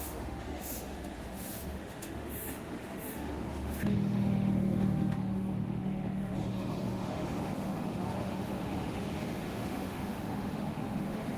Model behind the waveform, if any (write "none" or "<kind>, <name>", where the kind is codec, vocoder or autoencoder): autoencoder, DAC-VAE